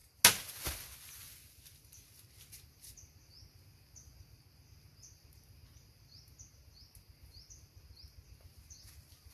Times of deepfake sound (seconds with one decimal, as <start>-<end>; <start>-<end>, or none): none